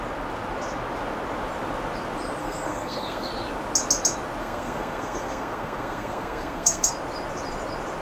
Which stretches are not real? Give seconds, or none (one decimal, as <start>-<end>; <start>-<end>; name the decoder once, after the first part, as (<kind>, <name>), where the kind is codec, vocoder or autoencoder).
2.4-3.3 (codec, SNAC); 4.4-6.9